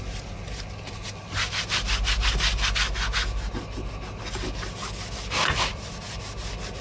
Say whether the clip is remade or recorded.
recorded